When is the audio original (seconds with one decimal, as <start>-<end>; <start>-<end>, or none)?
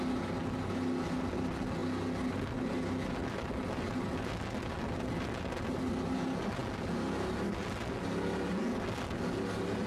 0.0-9.9